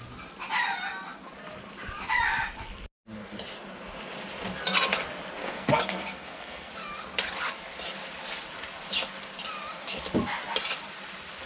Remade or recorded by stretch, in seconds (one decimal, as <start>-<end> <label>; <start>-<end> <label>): 0.0-5.4 recorded; 5.4-6.7 remade; 6.7-11.5 recorded